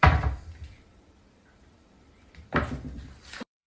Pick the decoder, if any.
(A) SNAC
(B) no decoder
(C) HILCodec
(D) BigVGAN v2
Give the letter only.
D